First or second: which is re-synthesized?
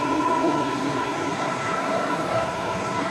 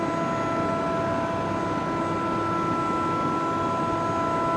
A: first